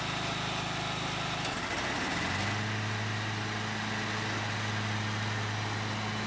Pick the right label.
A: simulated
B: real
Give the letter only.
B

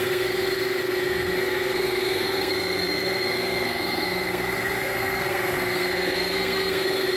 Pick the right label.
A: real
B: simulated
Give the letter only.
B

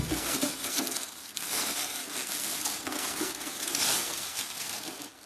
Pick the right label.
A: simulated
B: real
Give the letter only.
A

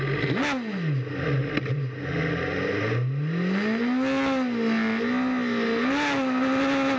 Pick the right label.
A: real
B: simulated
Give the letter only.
A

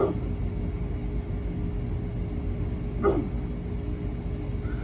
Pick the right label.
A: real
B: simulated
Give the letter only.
A